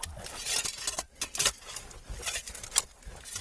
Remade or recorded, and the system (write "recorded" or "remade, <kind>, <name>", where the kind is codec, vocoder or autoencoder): recorded